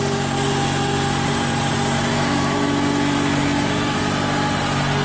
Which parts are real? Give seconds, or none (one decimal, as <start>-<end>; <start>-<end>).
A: 0.0-2.1; 4.0-5.0